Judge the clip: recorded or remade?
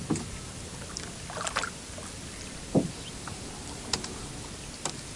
recorded